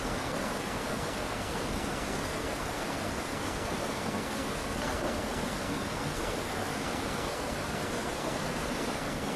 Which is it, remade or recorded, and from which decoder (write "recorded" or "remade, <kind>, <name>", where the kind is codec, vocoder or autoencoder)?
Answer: remade, codec, SNAC